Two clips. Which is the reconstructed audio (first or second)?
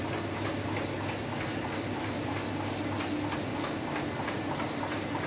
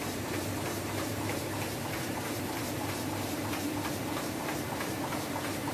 second